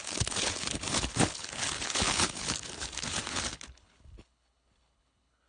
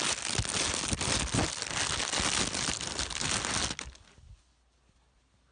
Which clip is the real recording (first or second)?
second